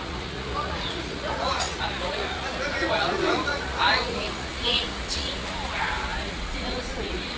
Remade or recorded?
remade